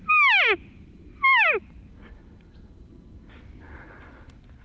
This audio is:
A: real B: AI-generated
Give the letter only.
A